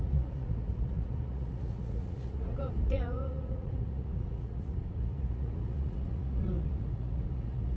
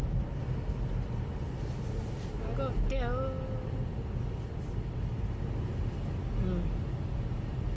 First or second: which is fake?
first